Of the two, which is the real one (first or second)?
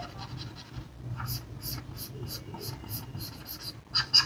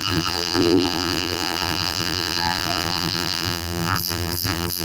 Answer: first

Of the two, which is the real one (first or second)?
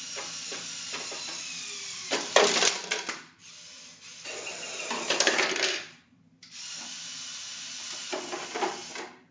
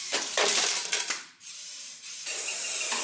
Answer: first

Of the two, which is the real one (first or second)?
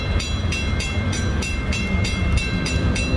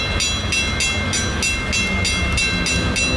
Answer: second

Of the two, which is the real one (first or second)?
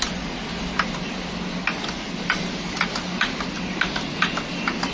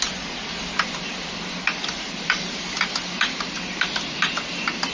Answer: first